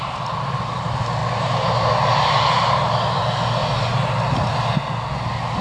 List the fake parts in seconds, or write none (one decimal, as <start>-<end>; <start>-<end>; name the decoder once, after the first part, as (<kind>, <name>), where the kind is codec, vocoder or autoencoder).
none